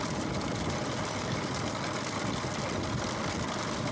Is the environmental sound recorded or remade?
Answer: recorded